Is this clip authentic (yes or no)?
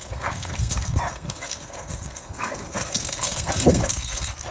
no